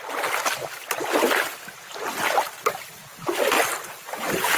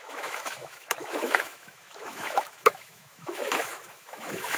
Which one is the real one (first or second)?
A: first